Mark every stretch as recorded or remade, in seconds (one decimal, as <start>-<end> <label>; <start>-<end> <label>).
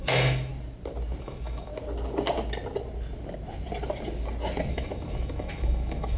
0.0-0.5 remade; 0.5-1.2 recorded; 1.2-1.7 remade; 1.7-4.7 recorded; 4.7-6.2 remade